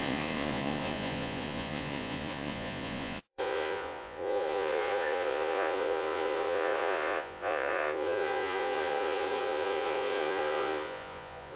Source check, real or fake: fake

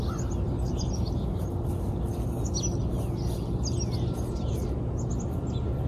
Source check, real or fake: real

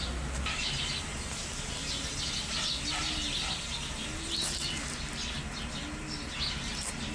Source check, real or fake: real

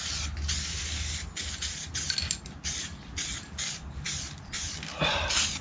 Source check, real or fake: real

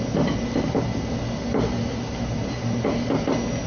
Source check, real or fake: real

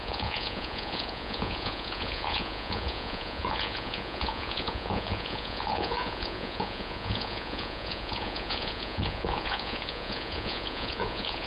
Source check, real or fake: fake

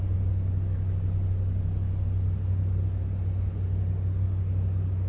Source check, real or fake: real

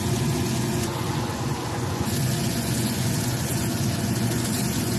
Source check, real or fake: fake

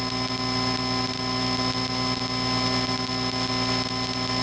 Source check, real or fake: real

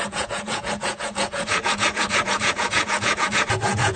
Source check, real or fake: fake